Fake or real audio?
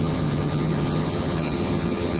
fake